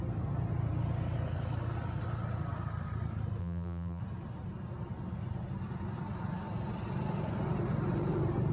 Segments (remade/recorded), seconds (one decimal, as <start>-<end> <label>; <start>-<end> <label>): 0.0-3.4 recorded; 3.4-4.0 remade; 4.0-8.5 recorded